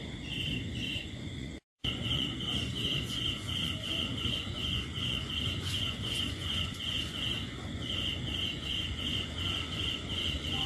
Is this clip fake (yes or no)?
yes